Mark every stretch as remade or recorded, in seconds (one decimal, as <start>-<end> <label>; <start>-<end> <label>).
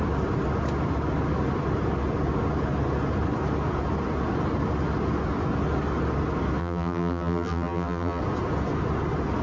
0.0-6.6 recorded; 6.6-8.2 remade; 8.2-9.4 recorded